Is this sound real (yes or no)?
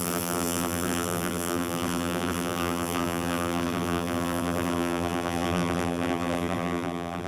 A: no